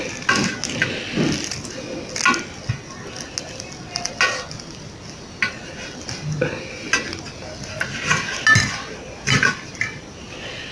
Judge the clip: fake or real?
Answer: real